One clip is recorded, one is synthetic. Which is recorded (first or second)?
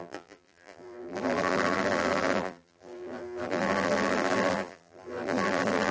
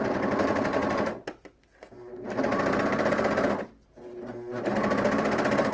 second